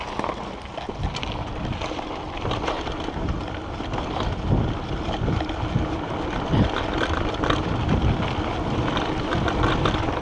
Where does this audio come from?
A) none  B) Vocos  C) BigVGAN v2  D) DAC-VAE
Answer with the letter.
A